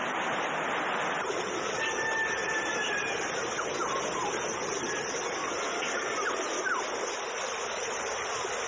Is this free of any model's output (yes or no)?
yes